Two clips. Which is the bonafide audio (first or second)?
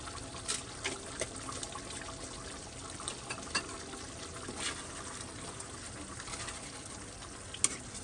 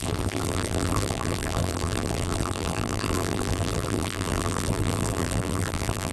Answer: first